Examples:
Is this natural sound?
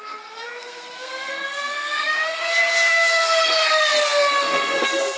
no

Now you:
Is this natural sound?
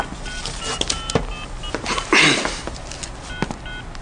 yes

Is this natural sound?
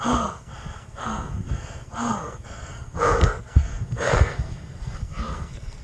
no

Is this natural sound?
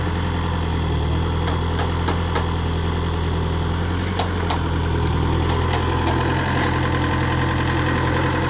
yes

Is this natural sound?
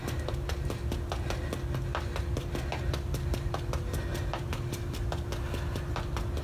yes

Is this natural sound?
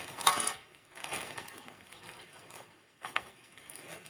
no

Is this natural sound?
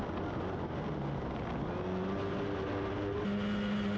yes